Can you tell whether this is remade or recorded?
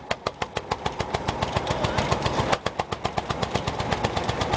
recorded